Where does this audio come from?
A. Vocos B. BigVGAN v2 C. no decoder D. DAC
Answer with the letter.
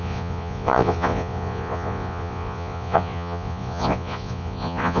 A